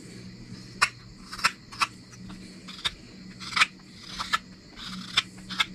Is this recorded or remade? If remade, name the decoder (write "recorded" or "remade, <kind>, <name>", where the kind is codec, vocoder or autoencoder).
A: recorded